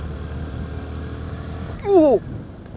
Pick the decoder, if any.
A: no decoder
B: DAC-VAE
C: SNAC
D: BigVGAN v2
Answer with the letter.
A